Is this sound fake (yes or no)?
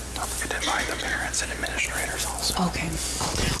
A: no